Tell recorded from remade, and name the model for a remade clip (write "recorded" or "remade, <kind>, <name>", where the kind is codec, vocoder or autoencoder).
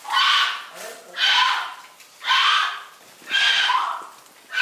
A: recorded